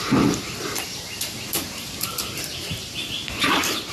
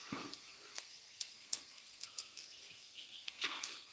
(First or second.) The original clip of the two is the first